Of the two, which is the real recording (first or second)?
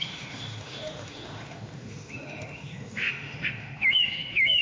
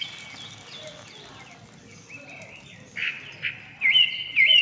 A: second